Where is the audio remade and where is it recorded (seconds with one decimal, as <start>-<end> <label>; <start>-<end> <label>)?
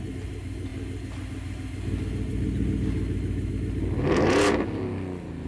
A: 0.0-5.5 recorded